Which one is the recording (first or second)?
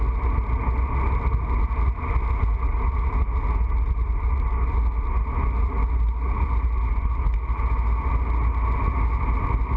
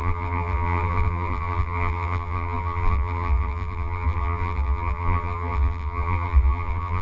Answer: first